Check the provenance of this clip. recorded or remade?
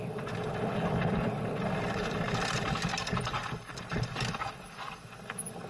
recorded